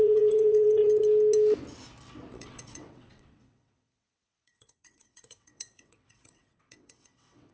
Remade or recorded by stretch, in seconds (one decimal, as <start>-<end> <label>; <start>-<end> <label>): 0.0-0.8 remade; 0.8-2.3 recorded; 2.3-7.5 remade

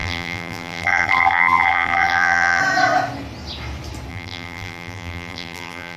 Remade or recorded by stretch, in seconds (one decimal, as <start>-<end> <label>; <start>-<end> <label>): 0.0-2.6 remade; 2.6-4.1 recorded; 4.1-6.0 remade

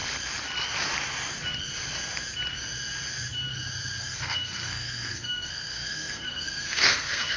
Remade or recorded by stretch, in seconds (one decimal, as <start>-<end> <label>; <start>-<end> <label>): 0.0-4.0 recorded; 4.0-7.4 remade

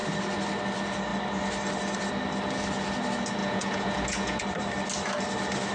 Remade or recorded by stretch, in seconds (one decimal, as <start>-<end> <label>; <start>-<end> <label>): 0.0-3.4 recorded; 3.4-4.4 remade; 4.4-5.7 recorded

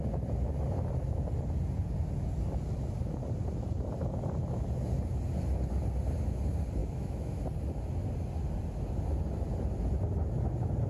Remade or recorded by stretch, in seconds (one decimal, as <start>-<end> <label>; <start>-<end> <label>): 0.0-6.8 recorded; 6.8-7.4 remade; 7.4-10.9 recorded

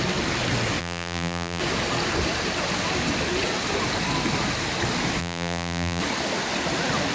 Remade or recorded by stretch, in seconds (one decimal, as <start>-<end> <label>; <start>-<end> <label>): 0.0-0.8 recorded; 0.8-1.6 remade; 1.6-5.2 recorded; 5.2-6.0 remade; 6.0-7.1 recorded

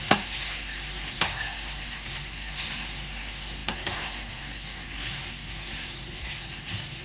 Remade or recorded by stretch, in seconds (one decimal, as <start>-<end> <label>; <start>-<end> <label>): 0.0-7.0 remade

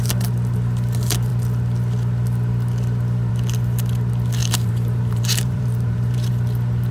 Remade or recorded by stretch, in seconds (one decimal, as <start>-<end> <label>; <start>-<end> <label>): 0.0-4.4 recorded; 4.4-6.3 remade; 6.3-6.9 recorded